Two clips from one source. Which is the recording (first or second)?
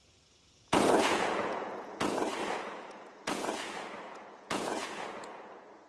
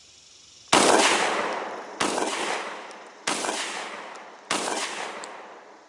second